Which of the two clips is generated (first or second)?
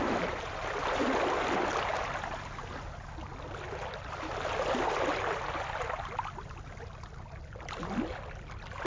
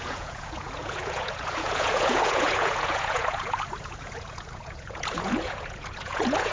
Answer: second